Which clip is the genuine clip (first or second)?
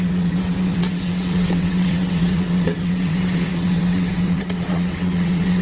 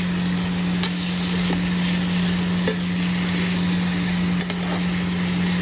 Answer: second